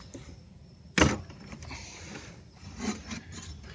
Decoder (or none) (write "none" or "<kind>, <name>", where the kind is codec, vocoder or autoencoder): none